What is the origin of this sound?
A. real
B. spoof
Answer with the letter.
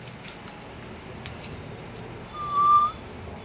A